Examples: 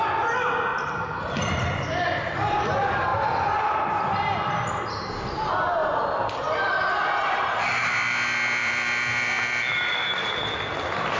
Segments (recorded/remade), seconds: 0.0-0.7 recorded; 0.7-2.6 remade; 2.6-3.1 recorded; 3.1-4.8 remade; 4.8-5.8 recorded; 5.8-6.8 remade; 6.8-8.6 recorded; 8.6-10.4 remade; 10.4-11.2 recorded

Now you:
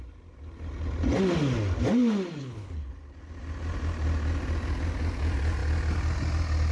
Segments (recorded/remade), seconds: 0.0-2.4 recorded; 2.4-2.9 remade; 2.9-6.7 recorded

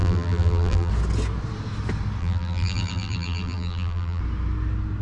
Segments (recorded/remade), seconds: 0.0-0.9 remade; 0.9-2.2 recorded; 2.2-4.2 remade; 4.2-5.0 recorded

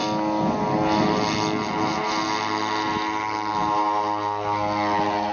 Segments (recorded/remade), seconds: 0.0-5.3 recorded

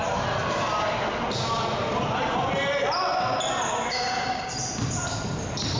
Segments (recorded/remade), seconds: 0.0-3.9 recorded; 3.9-4.5 remade; 4.5-5.8 recorded